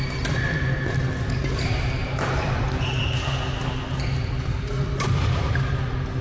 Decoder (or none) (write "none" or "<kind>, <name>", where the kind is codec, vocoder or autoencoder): none